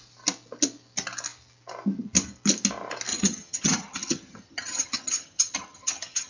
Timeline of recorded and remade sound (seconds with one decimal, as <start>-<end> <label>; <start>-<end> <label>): 0.0-3.1 recorded; 3.1-6.3 remade